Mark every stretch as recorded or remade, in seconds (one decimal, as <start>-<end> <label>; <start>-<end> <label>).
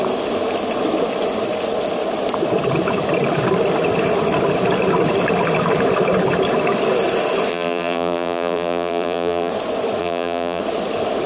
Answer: 0.0-7.5 recorded; 7.5-9.5 remade; 9.5-10.0 recorded; 10.0-10.6 remade; 10.6-11.3 recorded